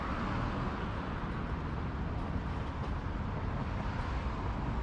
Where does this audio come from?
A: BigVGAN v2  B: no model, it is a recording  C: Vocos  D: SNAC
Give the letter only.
B